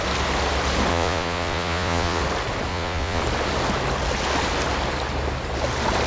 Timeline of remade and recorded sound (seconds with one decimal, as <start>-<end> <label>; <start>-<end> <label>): 0.0-0.9 recorded; 0.9-2.2 remade; 2.2-2.7 recorded; 2.7-3.2 remade; 3.2-6.1 recorded